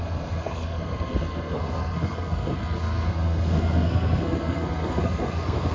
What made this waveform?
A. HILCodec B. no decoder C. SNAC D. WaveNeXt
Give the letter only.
C